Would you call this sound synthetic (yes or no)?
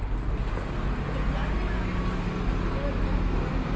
no